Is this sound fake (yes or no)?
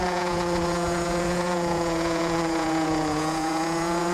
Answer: yes